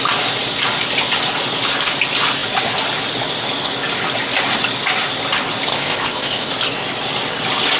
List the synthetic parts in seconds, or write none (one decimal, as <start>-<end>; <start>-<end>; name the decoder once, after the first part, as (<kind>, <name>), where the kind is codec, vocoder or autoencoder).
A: 5.7-6.5 (codec, ZipCodec)